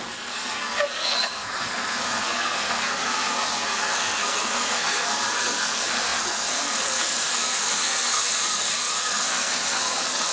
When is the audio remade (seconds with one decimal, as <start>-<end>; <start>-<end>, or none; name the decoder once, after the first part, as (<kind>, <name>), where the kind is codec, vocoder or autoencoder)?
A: 0.0-10.3 (codec, SNAC)